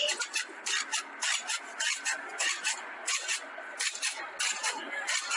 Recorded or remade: recorded